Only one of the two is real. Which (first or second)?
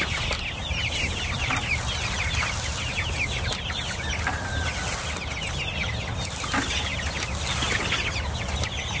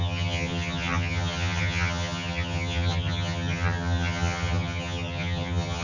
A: first